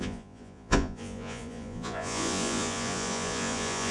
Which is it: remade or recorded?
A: remade